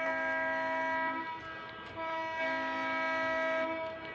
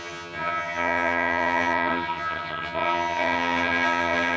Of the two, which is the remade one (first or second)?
second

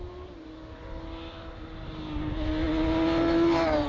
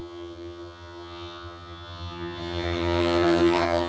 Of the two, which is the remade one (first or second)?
second